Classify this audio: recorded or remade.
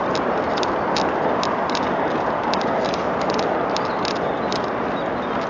recorded